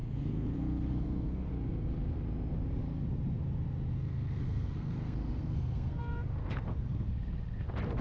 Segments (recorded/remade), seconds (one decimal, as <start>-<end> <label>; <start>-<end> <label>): 0.0-1.5 remade; 1.5-3.9 recorded; 3.9-6.0 remade; 6.0-6.4 recorded; 6.4-7.1 remade; 7.1-8.0 recorded